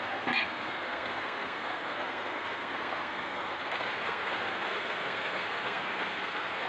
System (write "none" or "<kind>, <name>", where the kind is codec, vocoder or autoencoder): codec, SNAC